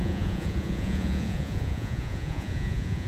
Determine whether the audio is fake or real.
fake